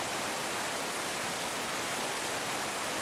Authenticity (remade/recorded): recorded